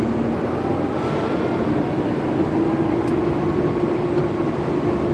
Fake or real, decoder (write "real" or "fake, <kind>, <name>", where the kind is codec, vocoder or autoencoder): real